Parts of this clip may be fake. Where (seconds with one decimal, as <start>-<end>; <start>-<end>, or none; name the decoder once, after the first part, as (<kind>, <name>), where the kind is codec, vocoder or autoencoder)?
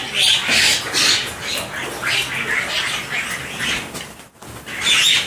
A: none